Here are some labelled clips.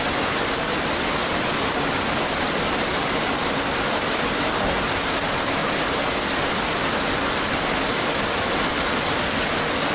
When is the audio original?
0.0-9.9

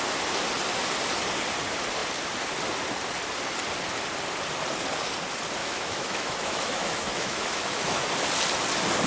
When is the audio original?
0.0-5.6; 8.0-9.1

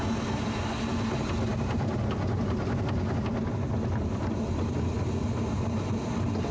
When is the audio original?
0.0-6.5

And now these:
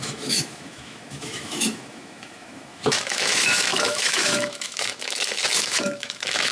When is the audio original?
none